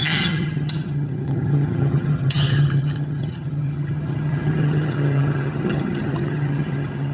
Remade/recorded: remade